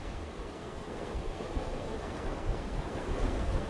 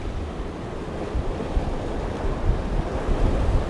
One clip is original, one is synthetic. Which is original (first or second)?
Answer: second